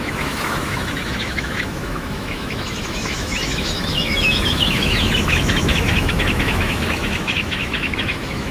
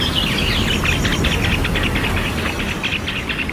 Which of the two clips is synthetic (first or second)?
first